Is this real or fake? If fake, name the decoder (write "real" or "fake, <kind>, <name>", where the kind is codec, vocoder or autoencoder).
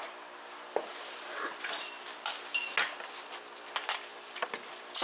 real